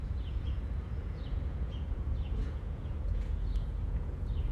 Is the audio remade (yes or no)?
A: yes